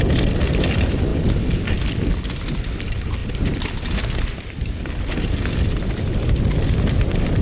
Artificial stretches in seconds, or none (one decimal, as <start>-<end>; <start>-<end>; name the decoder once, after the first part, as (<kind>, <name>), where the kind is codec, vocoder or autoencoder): none